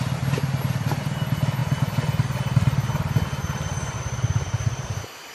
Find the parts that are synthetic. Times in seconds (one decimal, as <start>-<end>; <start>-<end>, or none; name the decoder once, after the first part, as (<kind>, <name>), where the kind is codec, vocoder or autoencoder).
none